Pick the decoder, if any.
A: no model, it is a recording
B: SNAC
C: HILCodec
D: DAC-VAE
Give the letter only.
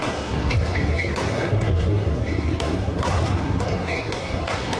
B